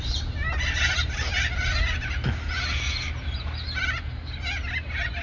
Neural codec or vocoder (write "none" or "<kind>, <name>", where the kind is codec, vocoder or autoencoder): none